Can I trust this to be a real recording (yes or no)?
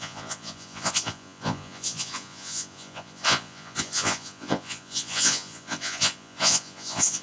no